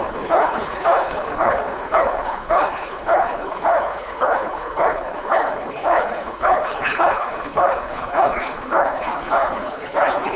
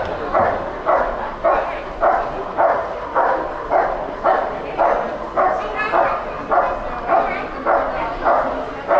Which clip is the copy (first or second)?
first